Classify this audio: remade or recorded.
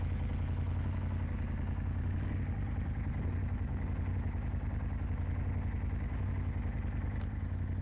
recorded